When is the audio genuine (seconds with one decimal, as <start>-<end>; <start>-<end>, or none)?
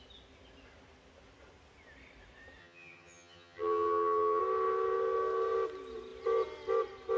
0.0-2.6; 4.4-7.2